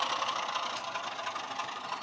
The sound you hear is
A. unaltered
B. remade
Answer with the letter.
A